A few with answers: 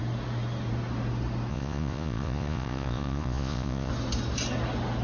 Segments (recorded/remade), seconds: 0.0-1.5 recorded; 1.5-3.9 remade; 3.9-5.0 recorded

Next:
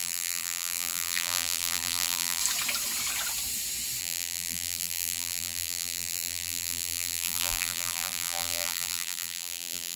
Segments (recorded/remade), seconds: 0.0-2.4 remade; 2.4-4.0 recorded; 4.0-10.0 remade

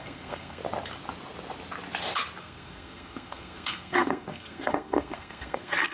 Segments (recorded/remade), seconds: 0.0-0.6 remade; 0.6-2.4 recorded; 2.4-5.9 remade